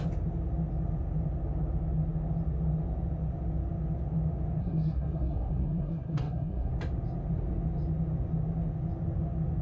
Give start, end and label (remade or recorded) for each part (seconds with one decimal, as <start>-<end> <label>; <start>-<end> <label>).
0.0-4.6 recorded; 4.6-6.7 remade; 6.7-9.6 recorded